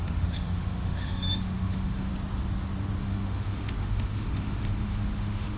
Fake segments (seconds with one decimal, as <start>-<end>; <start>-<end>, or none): 0.0-2.1; 3.0-5.6